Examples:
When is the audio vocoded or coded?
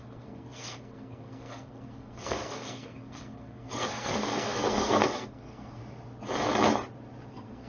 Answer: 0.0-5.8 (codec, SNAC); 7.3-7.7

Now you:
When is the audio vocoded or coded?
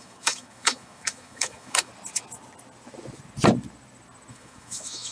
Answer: 0.0-1.9 (autoencoder, DAC-VAE); 4.3-5.1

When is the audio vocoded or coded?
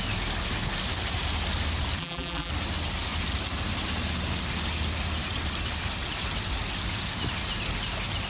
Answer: 2.0-2.5 (vocoder, BigVGAN v2)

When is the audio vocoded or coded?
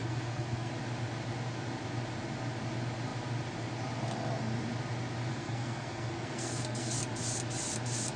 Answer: 0.0-0.7 (codec, SNAC); 5.3-7.0